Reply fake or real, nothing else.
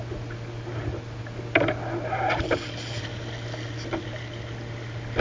real